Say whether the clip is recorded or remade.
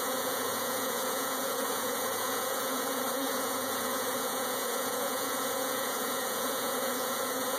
remade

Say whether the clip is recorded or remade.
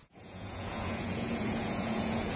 remade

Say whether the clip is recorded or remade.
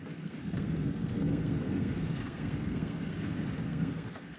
remade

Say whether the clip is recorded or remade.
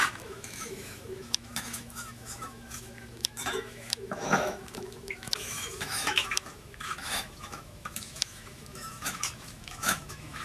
remade